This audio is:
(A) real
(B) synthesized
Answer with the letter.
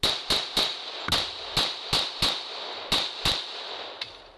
A